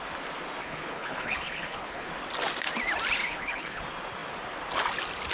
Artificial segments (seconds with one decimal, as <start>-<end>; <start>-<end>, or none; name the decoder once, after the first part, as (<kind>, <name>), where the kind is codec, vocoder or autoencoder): 0.6-2.1 (codec, HILCodec); 3.2-3.8